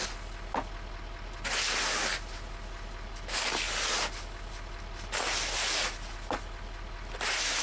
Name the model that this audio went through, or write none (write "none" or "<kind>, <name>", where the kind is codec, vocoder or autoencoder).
none